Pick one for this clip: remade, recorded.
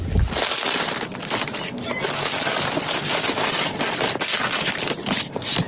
recorded